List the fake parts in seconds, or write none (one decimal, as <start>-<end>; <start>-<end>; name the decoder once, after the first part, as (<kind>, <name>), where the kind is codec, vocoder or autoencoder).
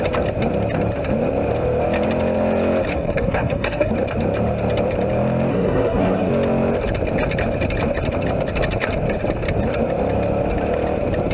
2.9-3.9 (codec, SNAC); 5.5-6.3